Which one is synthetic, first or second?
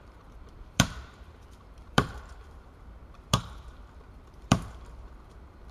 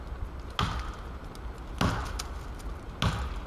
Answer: first